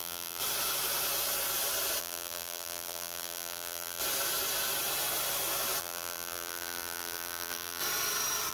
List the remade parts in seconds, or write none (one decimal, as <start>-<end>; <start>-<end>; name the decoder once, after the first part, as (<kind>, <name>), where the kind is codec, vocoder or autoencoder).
0.0-0.4 (vocoder, BigVGAN v2); 2.0-4.0; 5.8-7.8